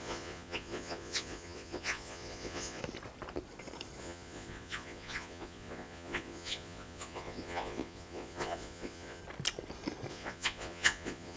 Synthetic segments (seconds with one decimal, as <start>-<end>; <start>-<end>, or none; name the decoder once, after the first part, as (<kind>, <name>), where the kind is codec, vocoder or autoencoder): 0.0-2.8 (vocoder, Vocos); 4.0-9.2; 10.1-11.4